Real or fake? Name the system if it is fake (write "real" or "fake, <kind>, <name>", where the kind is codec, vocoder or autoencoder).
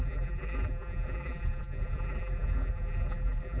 fake, vocoder, BigVGAN v2